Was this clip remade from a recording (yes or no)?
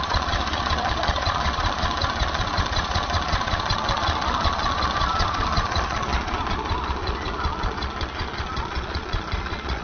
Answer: yes